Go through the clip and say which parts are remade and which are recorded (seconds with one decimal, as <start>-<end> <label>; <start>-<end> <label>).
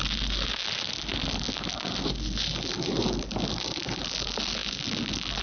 0.0-5.4 recorded